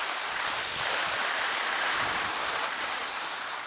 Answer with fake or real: real